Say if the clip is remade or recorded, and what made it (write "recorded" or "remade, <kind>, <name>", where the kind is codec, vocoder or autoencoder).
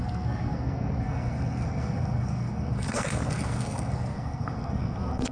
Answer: remade, codec, SNAC